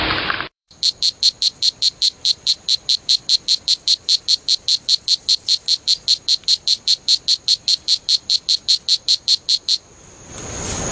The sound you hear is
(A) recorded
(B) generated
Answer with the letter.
B